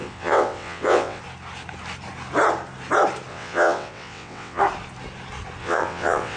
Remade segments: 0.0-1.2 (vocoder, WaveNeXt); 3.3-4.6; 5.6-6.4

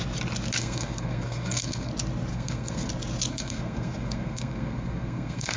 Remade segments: 0.6-1.9 (codec, SNAC); 2.3-2.9; 3.3-5.6

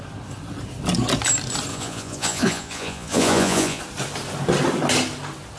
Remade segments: 1.7-3.8 (vocoder, Vocos)